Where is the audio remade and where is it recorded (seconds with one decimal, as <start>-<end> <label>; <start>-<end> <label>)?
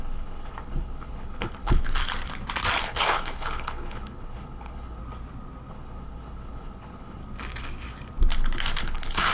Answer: 0.0-2.0 remade; 2.0-2.8 recorded; 2.8-5.0 remade; 5.0-5.7 recorded; 5.7-7.2 remade; 7.2-8.8 recorded; 8.8-9.3 remade